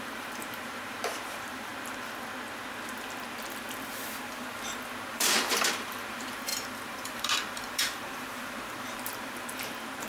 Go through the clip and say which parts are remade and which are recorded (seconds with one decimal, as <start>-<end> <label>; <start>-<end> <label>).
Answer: 0.0-1.7 remade; 1.7-5.1 recorded; 5.1-10.1 remade